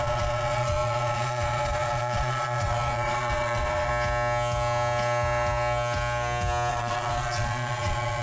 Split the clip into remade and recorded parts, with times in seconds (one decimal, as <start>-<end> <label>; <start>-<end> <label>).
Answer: 0.0-3.9 remade; 3.9-6.7 recorded; 6.7-8.2 remade